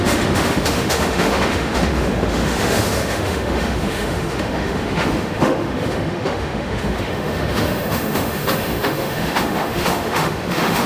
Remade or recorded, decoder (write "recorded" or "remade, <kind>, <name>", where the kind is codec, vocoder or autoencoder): remade, autoencoder, DAC-VAE